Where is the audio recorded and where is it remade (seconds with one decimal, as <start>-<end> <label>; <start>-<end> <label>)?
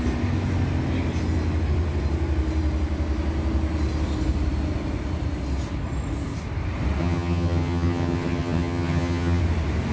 0.0-7.0 recorded; 7.0-9.4 remade; 9.4-9.9 recorded